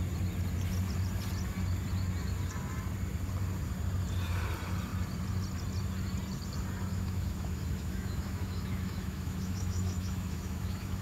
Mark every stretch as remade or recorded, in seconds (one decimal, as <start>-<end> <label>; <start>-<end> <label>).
0.0-6.9 recorded; 6.9-11.0 remade